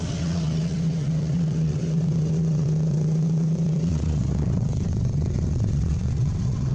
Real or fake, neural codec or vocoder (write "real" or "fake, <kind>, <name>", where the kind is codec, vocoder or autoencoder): fake, vocoder, WaveNeXt